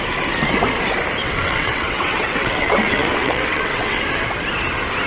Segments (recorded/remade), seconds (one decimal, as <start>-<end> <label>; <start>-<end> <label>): 0.0-1.2 recorded; 1.2-4.0 remade; 4.0-5.1 recorded